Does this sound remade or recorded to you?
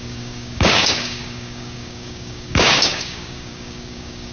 remade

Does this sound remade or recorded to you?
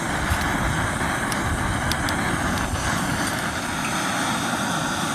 recorded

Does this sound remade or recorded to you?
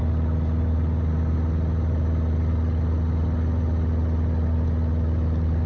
recorded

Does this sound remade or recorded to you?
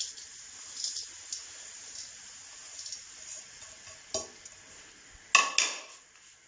recorded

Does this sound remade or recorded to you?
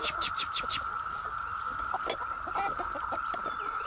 recorded